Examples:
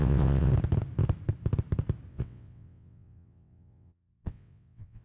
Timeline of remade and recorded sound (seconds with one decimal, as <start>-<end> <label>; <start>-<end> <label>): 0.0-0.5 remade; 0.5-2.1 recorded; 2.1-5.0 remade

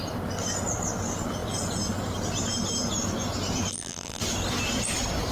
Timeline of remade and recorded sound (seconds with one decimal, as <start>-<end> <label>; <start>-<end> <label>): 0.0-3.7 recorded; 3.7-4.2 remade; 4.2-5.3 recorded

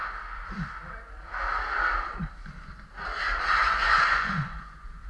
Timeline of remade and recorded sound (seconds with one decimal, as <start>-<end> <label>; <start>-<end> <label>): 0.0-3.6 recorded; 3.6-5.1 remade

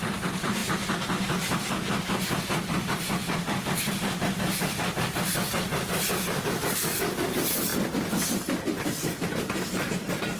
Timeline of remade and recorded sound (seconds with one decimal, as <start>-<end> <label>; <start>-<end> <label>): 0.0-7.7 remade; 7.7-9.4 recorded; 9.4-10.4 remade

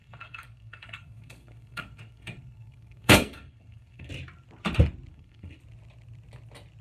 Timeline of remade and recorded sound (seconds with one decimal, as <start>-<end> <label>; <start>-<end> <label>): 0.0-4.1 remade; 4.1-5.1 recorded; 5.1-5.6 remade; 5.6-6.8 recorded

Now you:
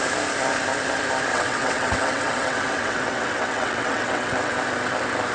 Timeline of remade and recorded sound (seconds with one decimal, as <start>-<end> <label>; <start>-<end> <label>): 0.0-1.3 recorded; 1.3-4.5 remade; 4.5-5.3 recorded

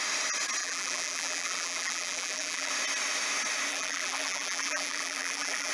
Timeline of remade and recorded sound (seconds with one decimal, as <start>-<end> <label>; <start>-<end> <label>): 0.0-0.6 recorded; 0.6-2.7 remade; 2.7-3.7 recorded; 3.7-5.7 remade

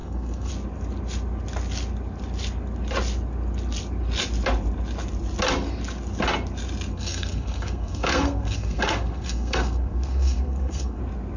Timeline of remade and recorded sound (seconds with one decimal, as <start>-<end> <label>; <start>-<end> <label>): 0.0-0.5 remade; 0.5-6.9 recorded; 6.9-11.0 remade; 11.0-11.4 recorded